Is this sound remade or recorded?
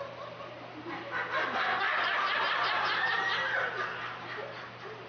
recorded